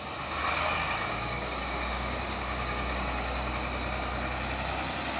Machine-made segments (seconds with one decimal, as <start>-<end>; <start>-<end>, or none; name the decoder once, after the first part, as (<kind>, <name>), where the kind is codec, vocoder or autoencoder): 0.4-3.5 (codec, DAC)